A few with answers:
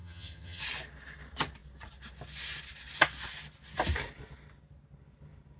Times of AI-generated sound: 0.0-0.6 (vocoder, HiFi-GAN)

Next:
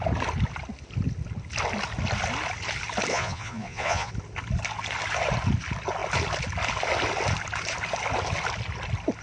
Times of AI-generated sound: 3.1-4.1 (vocoder, Vocos)

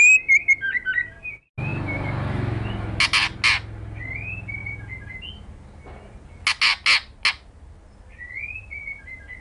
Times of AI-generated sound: none